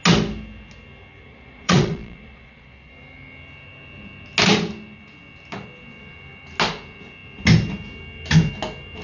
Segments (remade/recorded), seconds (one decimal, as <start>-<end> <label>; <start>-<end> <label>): 0.0-1.3 recorded; 1.3-2.9 remade; 2.9-9.0 recorded